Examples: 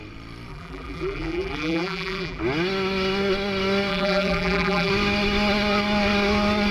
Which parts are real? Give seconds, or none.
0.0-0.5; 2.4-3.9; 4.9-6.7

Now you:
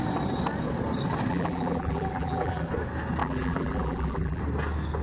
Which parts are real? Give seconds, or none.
0.0-1.3; 2.7-3.2; 4.4-5.0

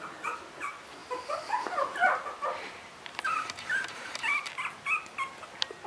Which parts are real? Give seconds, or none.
0.0-1.0; 4.5-5.9

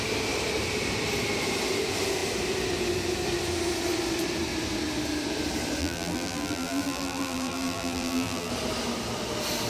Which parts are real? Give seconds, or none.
0.0-5.8; 8.5-9.7

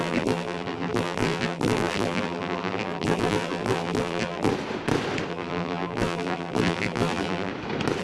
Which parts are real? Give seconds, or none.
4.5-5.3; 7.5-8.0

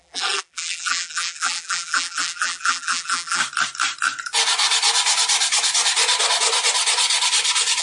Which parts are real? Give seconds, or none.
3.4-7.8

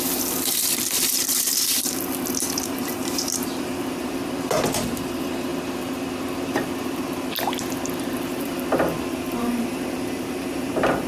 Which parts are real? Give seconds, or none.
5.5-8.4

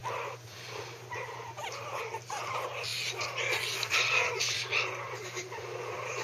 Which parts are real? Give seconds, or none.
0.0-6.2